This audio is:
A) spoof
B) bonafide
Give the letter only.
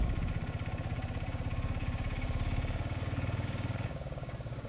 A